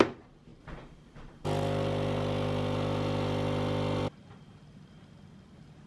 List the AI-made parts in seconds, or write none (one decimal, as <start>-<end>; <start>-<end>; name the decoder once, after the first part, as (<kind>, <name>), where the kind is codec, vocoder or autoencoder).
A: none